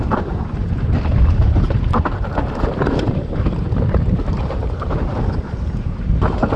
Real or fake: fake